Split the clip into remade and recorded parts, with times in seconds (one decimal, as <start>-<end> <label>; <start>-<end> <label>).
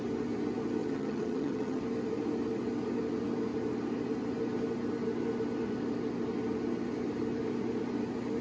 0.0-0.8 recorded; 0.8-1.8 remade; 1.8-8.4 recorded